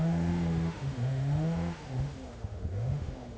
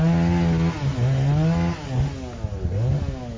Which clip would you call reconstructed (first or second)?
first